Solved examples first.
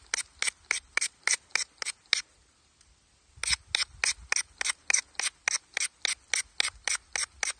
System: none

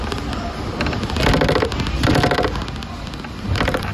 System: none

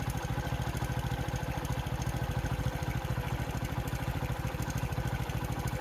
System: none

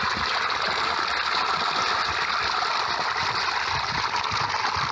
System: none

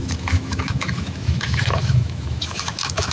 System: autoencoder, DAC-VAE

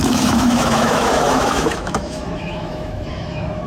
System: autoencoder, DAC-VAE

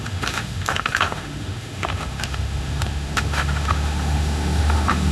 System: autoencoder, DAC-VAE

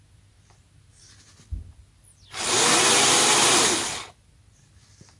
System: none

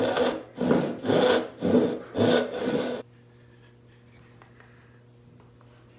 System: none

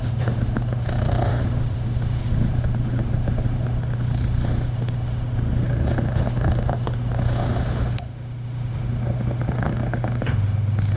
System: autoencoder, DAC-VAE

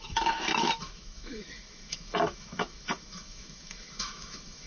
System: autoencoder, DAC-VAE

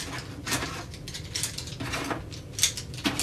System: none